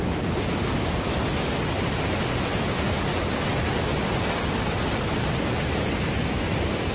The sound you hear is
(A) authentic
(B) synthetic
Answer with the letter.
A